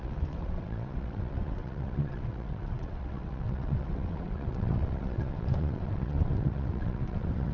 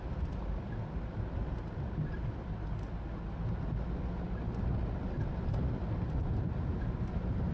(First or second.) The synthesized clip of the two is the first